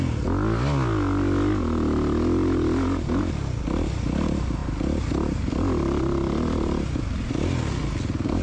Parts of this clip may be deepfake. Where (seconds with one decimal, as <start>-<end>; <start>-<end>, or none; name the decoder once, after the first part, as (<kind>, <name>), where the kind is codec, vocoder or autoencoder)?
none